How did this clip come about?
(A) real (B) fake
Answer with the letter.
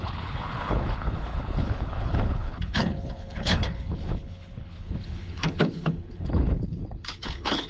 B